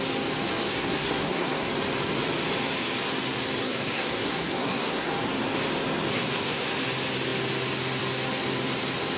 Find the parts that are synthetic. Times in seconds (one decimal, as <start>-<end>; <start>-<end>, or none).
0.7-1.7; 3.6-5.1; 6.1-6.7